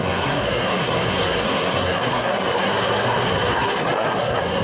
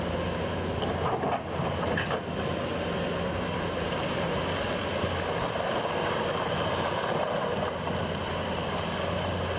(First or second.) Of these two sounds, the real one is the second